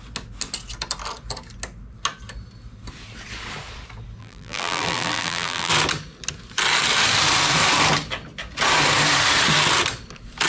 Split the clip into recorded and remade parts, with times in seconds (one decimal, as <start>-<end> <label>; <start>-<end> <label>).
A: 0.0-4.2 recorded; 4.2-5.7 remade; 5.7-10.5 recorded